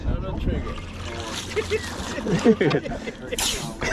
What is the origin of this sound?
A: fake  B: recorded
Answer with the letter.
B